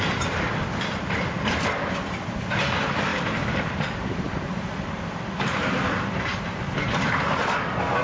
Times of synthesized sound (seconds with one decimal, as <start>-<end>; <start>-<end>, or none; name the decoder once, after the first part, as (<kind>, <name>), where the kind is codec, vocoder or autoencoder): 3.1-6.9 (vocoder, BigVGAN v2)